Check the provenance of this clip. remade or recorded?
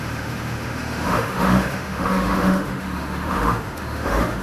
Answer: remade